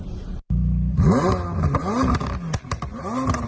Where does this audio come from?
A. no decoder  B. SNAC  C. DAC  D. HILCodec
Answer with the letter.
A